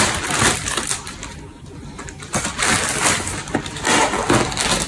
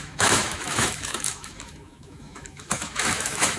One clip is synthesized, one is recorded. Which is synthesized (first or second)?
second